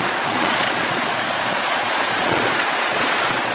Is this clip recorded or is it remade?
remade